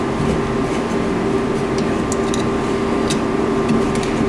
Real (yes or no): yes